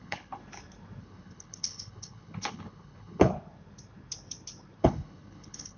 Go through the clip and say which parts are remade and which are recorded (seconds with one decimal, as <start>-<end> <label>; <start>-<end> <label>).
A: 0.0-0.4 remade; 0.4-1.0 recorded; 1.0-3.3 remade; 3.3-4.8 recorded; 4.8-5.8 remade